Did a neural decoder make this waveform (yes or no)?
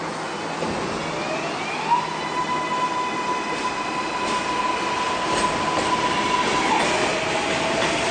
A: no